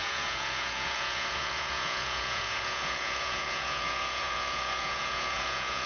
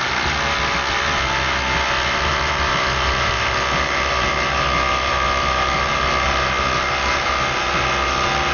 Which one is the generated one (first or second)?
first